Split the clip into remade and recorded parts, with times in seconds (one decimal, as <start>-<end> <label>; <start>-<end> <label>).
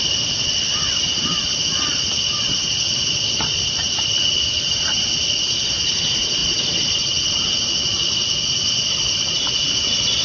0.0-10.2 recorded